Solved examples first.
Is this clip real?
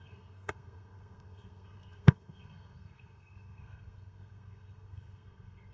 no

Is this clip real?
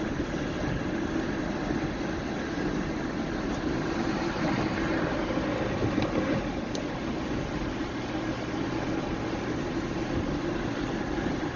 yes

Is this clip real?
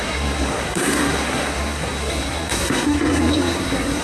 no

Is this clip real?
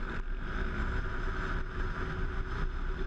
yes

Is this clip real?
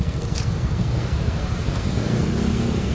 no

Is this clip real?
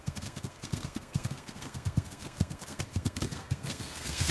no